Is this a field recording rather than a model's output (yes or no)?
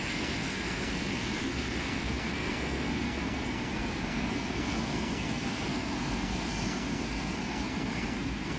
no